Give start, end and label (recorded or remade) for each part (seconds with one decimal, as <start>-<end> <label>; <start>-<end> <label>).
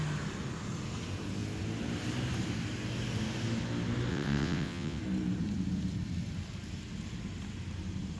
0.0-4.1 recorded; 4.1-5.0 remade; 5.0-8.2 recorded